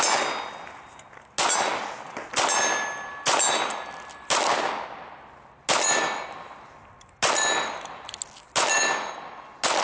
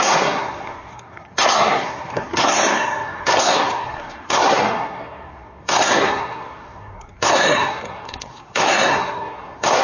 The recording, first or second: first